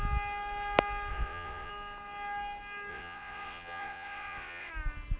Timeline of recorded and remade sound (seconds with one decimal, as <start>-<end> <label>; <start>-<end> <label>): 0.0-1.1 recorded; 1.1-1.7 remade; 1.7-2.9 recorded; 2.9-4.7 remade; 4.7-5.2 recorded